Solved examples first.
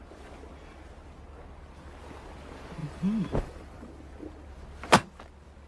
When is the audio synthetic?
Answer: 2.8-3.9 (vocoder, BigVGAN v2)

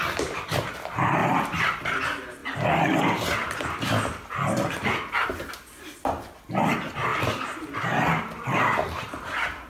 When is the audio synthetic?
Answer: none